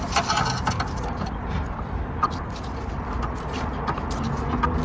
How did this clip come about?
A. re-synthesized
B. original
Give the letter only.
B